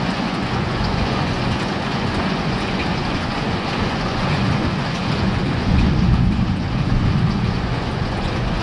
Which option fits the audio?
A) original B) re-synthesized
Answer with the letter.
B